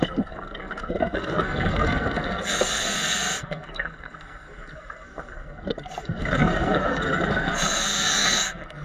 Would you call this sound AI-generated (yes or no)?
yes